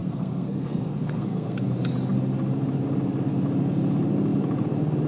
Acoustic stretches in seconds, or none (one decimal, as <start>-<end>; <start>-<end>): 1.7-5.1